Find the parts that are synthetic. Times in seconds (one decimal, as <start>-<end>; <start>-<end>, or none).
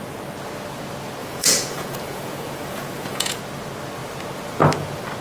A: 1.2-3.4